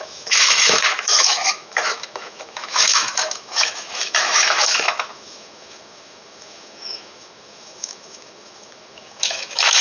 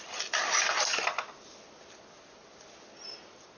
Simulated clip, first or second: first